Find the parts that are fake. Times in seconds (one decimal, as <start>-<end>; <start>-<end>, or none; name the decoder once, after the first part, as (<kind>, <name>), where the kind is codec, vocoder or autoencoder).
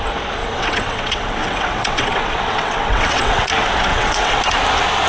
0.4-3.5 (vocoder, WaveNeXt); 3.9-4.4